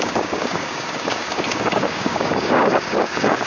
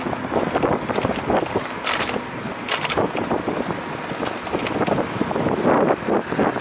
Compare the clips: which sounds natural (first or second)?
second